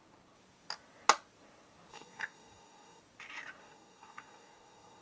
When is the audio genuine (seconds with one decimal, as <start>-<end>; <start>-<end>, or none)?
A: 0.0-1.9; 3.0-3.6